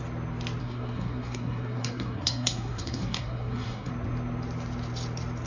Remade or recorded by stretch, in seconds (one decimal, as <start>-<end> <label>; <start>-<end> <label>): 0.0-0.6 recorded; 0.6-3.9 remade; 3.9-5.5 recorded